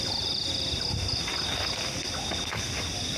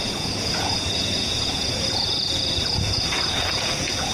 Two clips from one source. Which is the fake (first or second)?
second